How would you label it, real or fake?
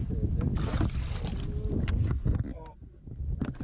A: real